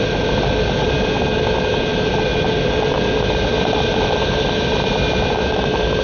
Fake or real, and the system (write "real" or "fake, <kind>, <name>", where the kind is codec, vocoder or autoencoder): real